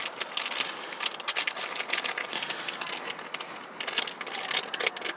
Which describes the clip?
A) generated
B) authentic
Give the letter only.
B